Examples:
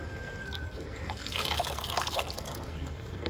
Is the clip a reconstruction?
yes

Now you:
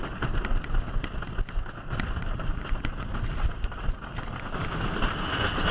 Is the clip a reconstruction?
no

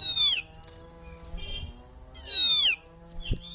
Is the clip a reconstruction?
no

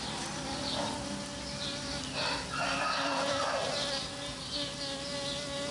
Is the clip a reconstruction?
no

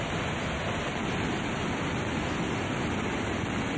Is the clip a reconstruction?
no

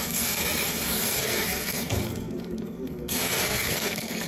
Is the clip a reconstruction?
yes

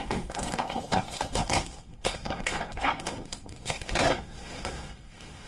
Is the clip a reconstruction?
yes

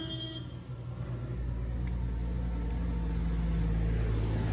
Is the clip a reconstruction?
no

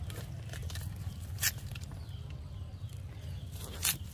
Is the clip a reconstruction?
no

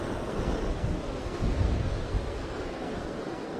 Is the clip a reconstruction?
yes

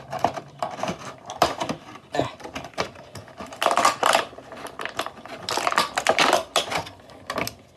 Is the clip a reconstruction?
no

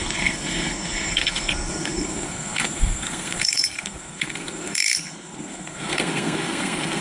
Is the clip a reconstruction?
yes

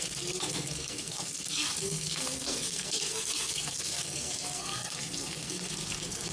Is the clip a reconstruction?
yes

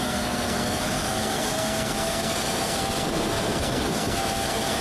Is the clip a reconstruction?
yes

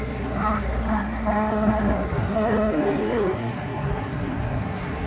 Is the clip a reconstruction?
yes